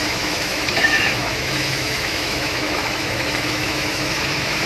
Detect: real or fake fake